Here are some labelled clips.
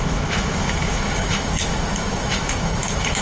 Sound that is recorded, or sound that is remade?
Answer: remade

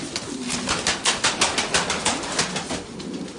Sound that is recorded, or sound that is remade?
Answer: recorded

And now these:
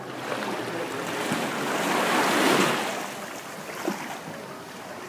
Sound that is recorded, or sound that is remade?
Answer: recorded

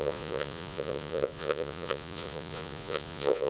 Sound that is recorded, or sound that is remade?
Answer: remade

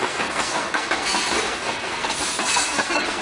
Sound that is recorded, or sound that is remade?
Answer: remade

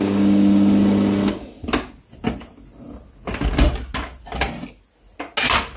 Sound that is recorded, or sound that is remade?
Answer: recorded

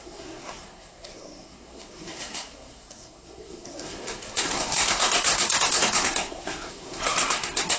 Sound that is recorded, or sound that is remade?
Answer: remade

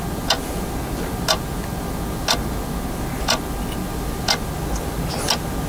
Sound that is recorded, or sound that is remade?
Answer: recorded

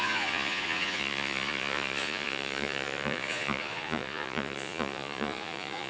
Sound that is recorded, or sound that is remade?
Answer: remade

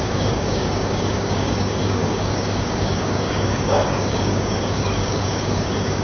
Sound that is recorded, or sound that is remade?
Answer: remade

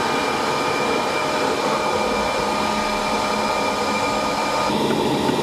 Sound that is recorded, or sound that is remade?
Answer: recorded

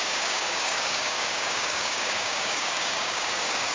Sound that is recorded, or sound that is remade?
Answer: remade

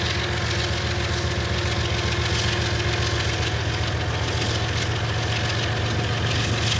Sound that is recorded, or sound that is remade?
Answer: recorded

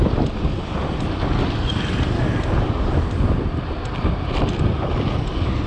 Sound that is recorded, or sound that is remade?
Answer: recorded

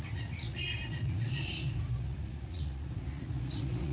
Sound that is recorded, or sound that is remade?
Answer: remade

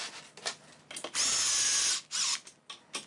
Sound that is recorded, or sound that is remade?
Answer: recorded